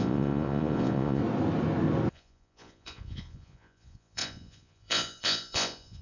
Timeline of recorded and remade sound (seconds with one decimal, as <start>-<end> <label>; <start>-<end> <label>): 0.0-1.2 remade; 1.2-2.1 recorded; 2.1-6.0 remade